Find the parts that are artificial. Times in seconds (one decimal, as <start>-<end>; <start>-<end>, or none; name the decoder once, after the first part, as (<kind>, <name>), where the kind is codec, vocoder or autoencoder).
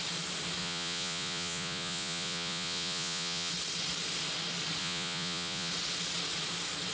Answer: 0.6-3.5 (vocoder, Vocos); 4.8-5.7